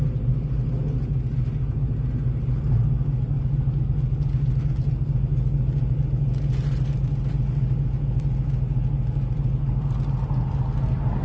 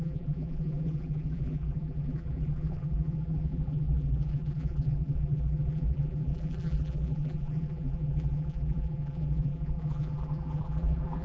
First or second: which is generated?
second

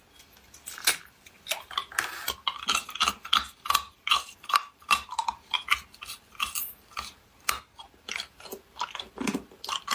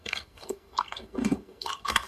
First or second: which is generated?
second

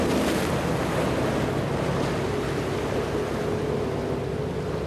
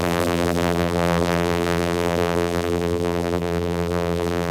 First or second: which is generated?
second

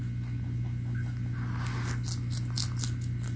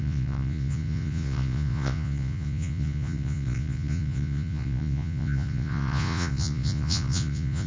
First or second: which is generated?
second